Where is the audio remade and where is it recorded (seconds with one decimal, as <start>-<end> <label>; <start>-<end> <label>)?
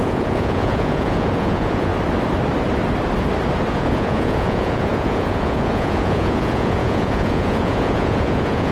0.0-1.9 remade; 1.9-3.7 recorded; 3.7-8.7 remade